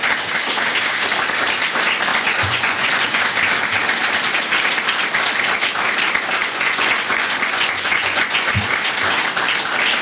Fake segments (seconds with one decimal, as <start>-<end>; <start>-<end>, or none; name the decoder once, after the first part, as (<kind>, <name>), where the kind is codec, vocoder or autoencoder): 2.1-3.3 (vocoder, Vocos); 6.4-8.6

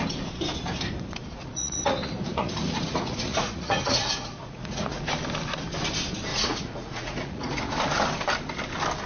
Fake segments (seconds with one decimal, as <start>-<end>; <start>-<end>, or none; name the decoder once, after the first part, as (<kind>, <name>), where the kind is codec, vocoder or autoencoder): 1.4-5.0 (vocoder, Vocos); 6.3-7.6

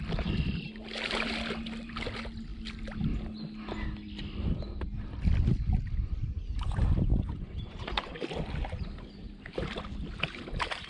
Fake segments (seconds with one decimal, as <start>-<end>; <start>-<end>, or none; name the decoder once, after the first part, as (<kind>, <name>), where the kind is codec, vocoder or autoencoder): 7.1-8.1 (vocoder, Vocos)

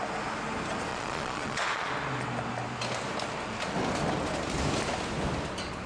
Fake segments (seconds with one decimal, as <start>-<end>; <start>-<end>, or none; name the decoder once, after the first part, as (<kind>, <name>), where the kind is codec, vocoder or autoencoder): 0.9-1.9 (vocoder, Vocos)

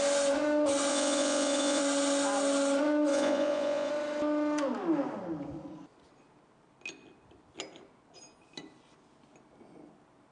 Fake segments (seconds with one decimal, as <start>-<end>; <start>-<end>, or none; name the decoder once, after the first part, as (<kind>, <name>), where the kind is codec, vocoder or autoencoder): 0.9-1.8 (vocoder, Vocos); 3.1-3.9

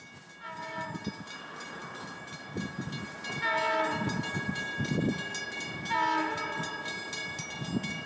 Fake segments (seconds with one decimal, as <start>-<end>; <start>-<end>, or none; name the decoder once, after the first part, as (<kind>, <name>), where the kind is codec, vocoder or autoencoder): none

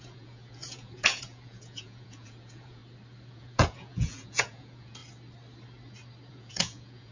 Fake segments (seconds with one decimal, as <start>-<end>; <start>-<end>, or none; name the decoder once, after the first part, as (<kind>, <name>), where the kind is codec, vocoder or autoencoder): 0.0-2.8 (vocoder, Vocos); 3.3-5.0; 6.3-7.1

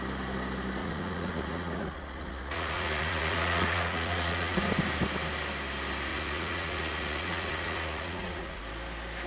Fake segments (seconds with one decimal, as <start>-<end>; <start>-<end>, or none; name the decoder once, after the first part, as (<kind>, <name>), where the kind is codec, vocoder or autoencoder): 0.8-4.6 (vocoder, Vocos); 6.1-8.6